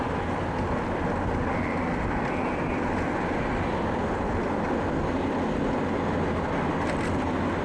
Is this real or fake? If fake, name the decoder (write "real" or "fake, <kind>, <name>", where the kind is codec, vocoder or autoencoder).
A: real